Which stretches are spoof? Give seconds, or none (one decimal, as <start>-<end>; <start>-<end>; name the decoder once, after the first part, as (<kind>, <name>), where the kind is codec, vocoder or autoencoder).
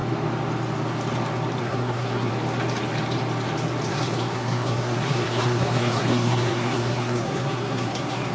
1.6-2.3 (codec, SNAC); 3.9-8.3